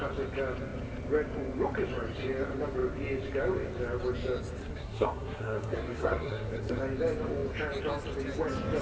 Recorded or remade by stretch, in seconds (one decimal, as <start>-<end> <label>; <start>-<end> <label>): 0.0-4.6 recorded; 4.6-6.8 remade; 6.8-8.8 recorded